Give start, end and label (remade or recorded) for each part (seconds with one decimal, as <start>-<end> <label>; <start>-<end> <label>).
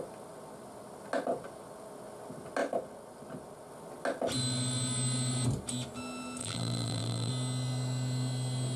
0.0-6.4 recorded; 6.4-7.3 remade; 7.3-8.8 recorded